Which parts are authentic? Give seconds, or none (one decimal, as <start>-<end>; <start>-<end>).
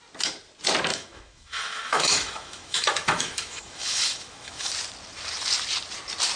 0.0-0.9; 4.7-6.4